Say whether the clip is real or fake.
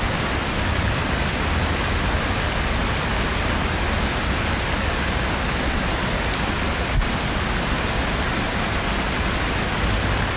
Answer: real